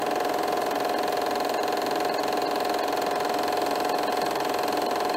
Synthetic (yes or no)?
no